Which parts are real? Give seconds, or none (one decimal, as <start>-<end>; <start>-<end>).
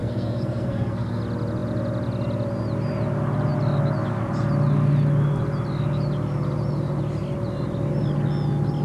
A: 1.2-8.8